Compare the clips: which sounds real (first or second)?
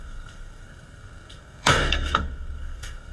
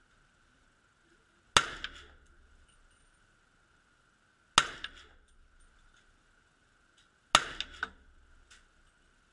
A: second